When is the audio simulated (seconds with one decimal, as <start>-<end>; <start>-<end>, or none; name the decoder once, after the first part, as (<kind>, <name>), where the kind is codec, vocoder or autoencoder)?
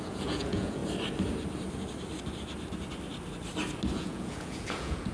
0.0-0.8 (vocoder, Vocos); 3.9-5.1